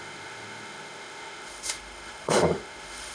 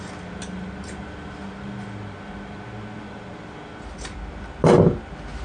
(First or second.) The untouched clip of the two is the second